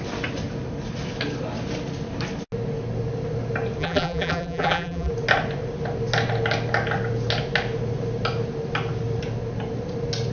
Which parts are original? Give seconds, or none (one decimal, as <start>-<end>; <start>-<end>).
0.0-3.8; 5.1-10.3